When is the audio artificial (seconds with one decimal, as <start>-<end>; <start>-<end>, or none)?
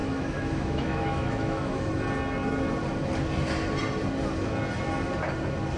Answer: 0.0-1.9